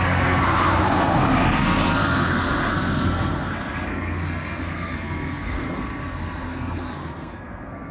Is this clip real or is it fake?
fake